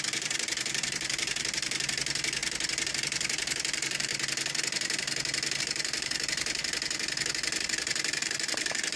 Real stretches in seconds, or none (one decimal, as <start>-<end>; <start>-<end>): 2.4-2.9; 4.1-5.6; 6.6-7.6